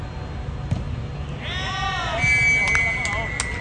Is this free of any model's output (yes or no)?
yes